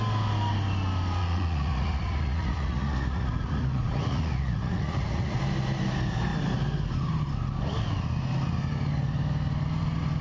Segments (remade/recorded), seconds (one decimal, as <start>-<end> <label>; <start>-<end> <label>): 0.0-1.2 recorded; 1.2-5.4 remade; 5.4-10.2 recorded